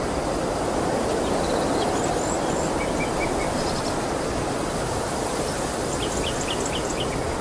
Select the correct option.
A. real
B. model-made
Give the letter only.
A